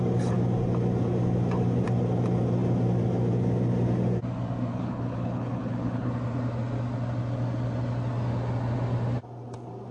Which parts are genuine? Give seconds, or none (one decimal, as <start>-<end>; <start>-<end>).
0.0-4.7; 6.1-9.9